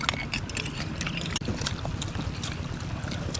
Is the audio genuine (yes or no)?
yes